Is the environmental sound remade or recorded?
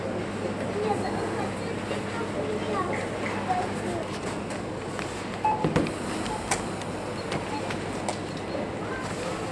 recorded